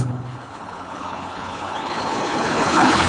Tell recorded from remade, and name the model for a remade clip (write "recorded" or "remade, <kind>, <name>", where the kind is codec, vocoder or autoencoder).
remade, codec, HILCodec